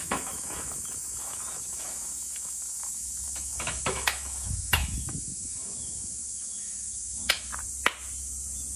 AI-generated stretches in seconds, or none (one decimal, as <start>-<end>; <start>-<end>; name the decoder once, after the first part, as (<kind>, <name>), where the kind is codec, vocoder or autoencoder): 0.0-7.5 (autoencoder, DAC-VAE)